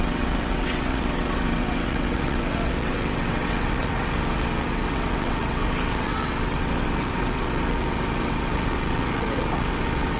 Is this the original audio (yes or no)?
no